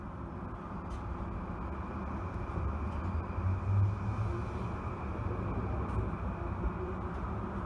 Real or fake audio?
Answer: real